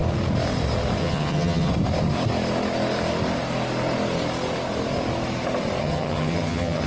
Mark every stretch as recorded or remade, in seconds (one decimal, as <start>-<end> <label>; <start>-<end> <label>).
0.0-1.0 recorded; 1.0-1.7 remade; 1.7-5.8 recorded; 5.8-6.9 remade